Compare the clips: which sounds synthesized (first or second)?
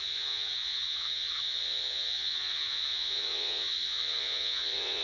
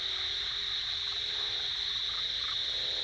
first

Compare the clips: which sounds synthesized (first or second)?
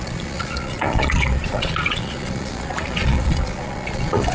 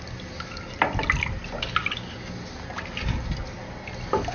first